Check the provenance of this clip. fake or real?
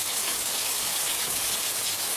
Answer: fake